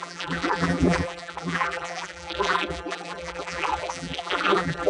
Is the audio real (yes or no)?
no